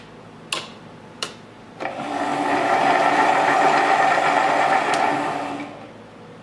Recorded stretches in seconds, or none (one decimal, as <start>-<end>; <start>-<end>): 0.0-0.7; 1.5-6.4